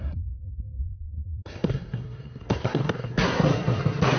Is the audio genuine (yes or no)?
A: no